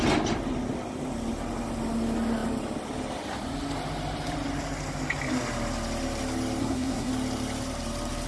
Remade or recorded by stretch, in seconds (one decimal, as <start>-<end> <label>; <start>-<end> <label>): 0.0-6.6 recorded; 6.6-7.1 remade; 7.1-8.3 recorded